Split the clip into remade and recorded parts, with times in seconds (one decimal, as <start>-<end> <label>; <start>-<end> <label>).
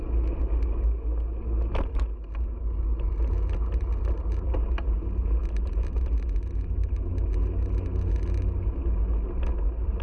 0.0-10.0 recorded